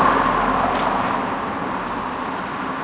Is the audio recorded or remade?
recorded